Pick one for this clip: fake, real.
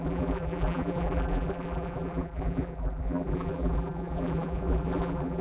fake